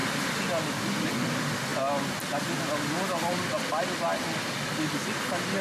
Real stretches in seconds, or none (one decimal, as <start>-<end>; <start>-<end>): 0.0-5.6